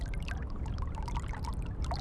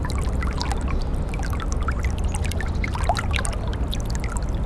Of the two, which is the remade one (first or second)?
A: first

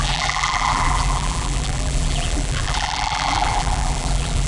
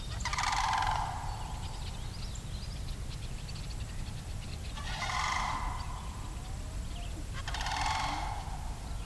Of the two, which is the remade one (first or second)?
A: first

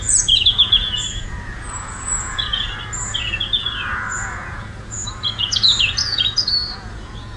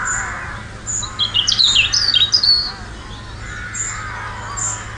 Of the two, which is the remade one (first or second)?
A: first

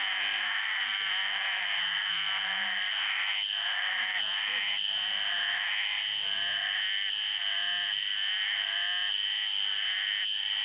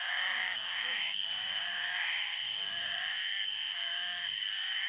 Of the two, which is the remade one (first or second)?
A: second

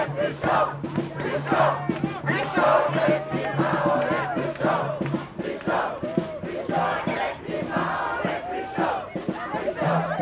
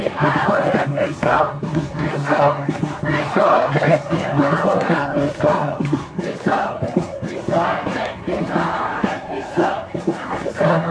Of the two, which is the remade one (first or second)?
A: second